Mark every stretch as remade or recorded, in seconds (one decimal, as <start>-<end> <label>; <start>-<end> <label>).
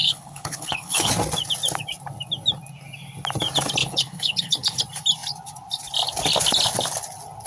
0.0-1.1 remade; 1.1-3.8 recorded; 3.8-4.8 remade; 4.8-7.5 recorded